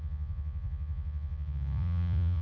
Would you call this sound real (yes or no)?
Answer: no